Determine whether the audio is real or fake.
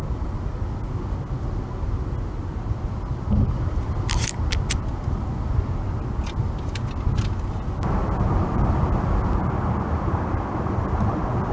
real